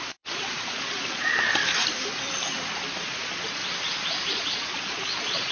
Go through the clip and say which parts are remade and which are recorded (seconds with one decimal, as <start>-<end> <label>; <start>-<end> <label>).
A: 0.0-1.5 remade; 1.5-3.0 recorded; 3.0-3.6 remade; 3.6-4.3 recorded; 4.3-5.5 remade